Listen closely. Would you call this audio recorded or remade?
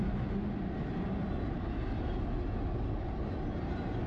recorded